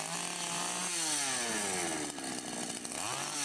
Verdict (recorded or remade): recorded